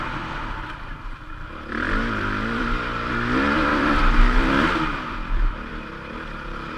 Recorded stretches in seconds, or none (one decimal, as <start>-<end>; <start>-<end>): 0.0-3.7; 5.7-6.8